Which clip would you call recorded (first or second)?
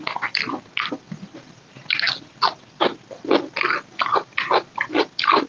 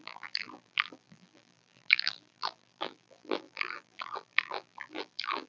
first